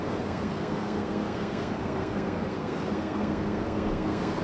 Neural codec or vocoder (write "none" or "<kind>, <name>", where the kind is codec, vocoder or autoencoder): codec, SNAC